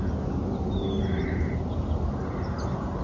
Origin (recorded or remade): recorded